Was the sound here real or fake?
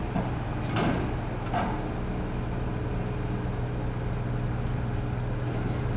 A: real